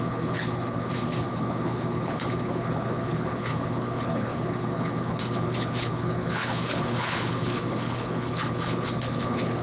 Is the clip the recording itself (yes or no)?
no